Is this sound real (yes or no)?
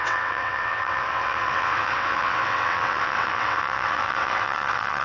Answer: no